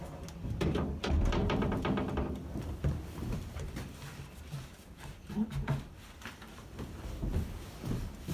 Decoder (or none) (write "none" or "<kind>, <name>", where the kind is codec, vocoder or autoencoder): vocoder, BigVGAN v2